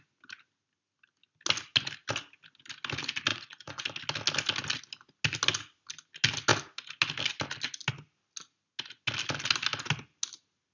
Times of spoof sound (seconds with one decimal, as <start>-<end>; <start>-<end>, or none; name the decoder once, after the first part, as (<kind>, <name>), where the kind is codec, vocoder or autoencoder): 3.3-3.8 (vocoder, Vocos)

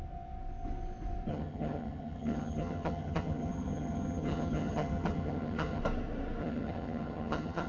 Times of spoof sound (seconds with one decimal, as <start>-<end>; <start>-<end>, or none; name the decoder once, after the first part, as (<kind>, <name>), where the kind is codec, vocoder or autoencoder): 1.3-5.8 (vocoder, HiFi-GAN); 6.4-7.7

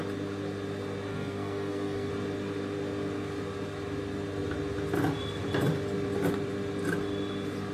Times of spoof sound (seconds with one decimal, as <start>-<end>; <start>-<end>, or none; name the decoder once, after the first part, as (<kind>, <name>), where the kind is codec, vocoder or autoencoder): 1.1-2.1 (codec, SNAC)

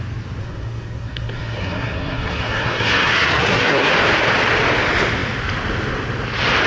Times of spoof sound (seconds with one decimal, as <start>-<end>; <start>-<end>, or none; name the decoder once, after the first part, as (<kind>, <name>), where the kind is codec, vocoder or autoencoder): 0.4-3.9 (codec, SNAC)

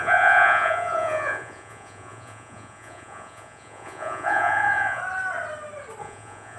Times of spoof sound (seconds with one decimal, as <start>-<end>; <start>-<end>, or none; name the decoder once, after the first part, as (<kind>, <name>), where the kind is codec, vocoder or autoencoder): 0.0-5.0 (vocoder, Vocos); 6.0-6.6

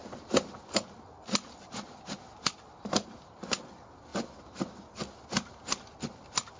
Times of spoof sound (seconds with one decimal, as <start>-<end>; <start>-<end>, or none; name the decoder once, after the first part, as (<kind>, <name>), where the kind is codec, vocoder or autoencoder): none

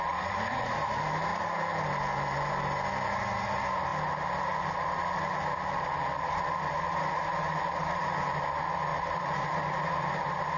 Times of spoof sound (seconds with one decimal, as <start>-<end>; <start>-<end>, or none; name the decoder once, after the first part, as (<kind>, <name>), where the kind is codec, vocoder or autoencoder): 8.9-10.2 (vocoder, BigVGAN v2)